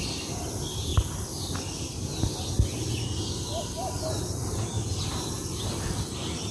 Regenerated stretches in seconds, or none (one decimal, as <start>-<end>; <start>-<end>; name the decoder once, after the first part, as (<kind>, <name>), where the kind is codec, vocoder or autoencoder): none